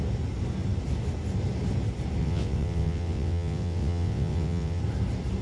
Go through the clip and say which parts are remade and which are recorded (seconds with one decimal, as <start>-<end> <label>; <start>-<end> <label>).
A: 0.0-2.2 recorded; 2.2-4.8 remade; 4.8-5.4 recorded